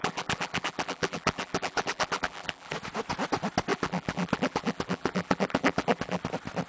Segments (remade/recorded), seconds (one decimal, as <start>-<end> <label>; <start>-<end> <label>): 0.0-2.7 remade; 2.7-3.7 recorded; 3.7-6.2 remade; 6.2-6.7 recorded